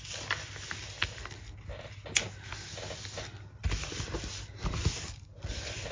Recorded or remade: recorded